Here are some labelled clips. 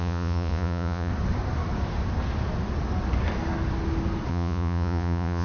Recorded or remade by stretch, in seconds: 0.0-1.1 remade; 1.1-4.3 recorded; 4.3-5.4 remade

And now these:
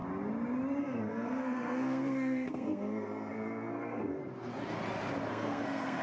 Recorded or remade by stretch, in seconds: 0.0-0.8 recorded; 0.8-4.2 remade; 4.2-5.3 recorded; 5.3-6.0 remade

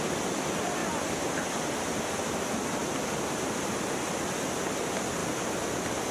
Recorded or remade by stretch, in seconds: 0.0-6.1 recorded

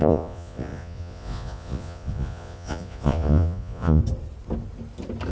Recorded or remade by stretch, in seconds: 0.0-4.0 remade; 4.0-5.3 recorded